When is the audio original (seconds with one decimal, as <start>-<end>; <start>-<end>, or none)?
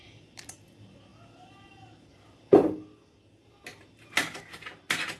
0.0-5.2